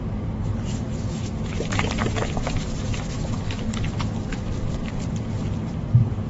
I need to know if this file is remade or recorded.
recorded